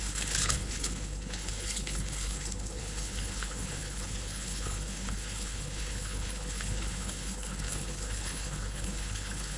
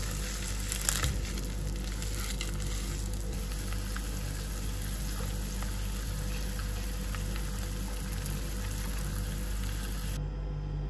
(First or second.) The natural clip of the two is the second